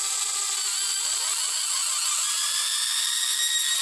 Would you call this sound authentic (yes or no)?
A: yes